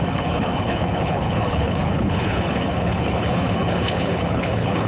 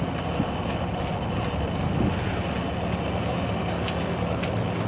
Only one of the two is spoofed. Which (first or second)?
first